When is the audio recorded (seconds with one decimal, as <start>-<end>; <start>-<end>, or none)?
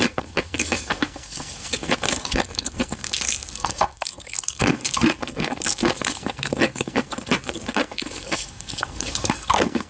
none